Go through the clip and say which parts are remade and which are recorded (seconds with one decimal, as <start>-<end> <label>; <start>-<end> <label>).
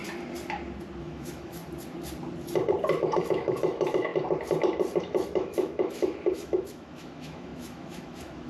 0.0-1.0 recorded; 1.0-1.6 remade; 1.6-3.2 recorded; 3.2-4.1 remade; 4.1-5.0 recorded; 5.0-8.5 remade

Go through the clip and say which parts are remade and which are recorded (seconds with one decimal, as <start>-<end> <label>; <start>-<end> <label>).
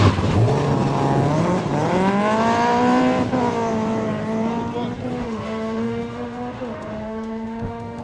0.0-5.1 recorded; 5.1-8.0 remade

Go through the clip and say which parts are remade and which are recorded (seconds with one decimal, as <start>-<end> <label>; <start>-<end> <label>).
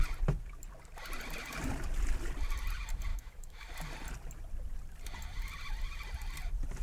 0.0-3.1 recorded; 3.1-3.7 remade; 3.7-6.8 recorded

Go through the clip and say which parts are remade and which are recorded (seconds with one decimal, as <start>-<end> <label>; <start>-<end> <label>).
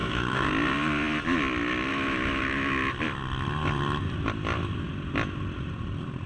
0.0-0.5 remade; 0.5-1.9 recorded; 1.9-2.9 remade; 2.9-6.3 recorded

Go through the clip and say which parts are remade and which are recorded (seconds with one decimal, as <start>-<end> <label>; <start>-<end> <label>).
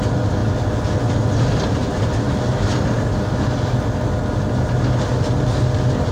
0.0-6.1 recorded